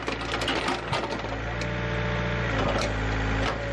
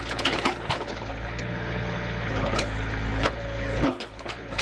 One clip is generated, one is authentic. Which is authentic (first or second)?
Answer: first